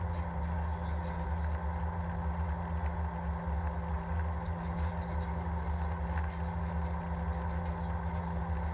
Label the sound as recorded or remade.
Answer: recorded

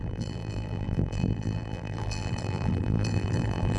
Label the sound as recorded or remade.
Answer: remade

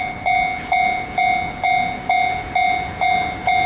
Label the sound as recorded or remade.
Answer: recorded